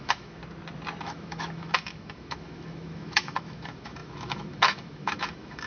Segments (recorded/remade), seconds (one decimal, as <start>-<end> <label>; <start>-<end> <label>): 0.0-0.4 remade; 0.4-1.0 recorded; 1.0-5.7 remade